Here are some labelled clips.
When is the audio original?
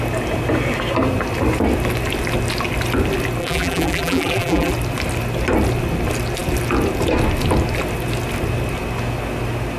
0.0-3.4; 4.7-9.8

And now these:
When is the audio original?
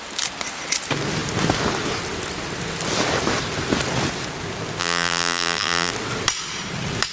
0.0-4.8; 5.9-7.1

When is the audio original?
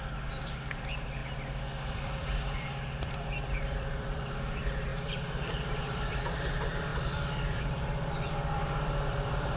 1.2-1.9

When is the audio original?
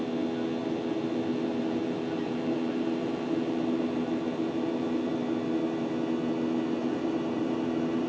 0.0-0.6; 5.1-6.8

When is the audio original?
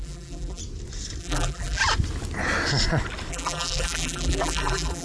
0.6-1.2; 1.8-3.3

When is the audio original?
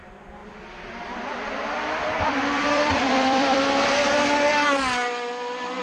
0.0-0.4; 3.6-5.8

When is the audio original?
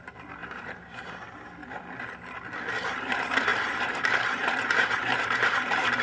1.6-3.0